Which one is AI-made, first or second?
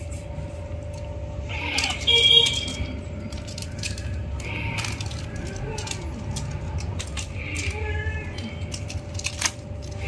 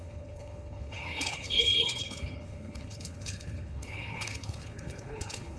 second